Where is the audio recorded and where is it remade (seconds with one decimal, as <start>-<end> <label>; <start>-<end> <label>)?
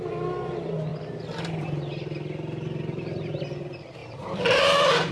0.0-4.0 recorded; 4.0-5.1 remade